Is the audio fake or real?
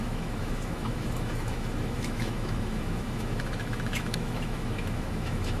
fake